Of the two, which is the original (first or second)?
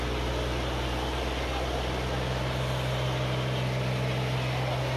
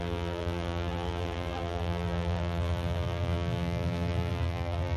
first